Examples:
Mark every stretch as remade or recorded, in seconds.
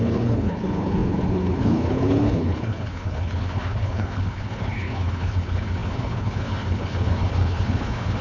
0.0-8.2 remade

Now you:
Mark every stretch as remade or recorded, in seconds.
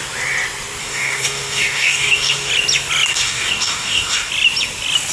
0.0-0.8 recorded; 0.8-2.5 remade; 2.5-3.1 recorded; 3.1-4.3 remade; 4.3-5.1 recorded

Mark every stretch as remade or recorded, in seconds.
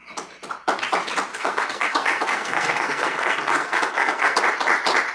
0.0-1.3 recorded; 1.3-4.4 remade; 4.4-5.1 recorded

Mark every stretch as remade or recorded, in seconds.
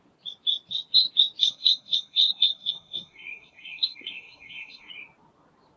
0.0-1.4 recorded; 1.4-4.9 remade; 4.9-5.8 recorded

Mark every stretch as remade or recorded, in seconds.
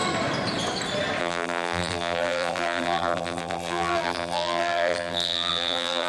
0.0-1.2 recorded; 1.2-6.1 remade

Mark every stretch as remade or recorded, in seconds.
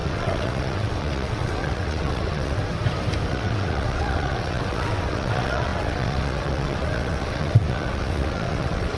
0.0-2.6 remade; 2.6-3.3 recorded; 3.3-9.0 remade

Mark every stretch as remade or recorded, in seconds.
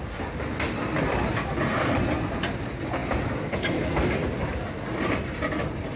0.0-3.0 recorded; 3.0-3.8 remade; 3.8-6.0 recorded